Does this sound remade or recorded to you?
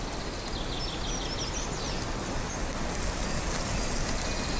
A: recorded